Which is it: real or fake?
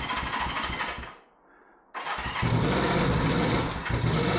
real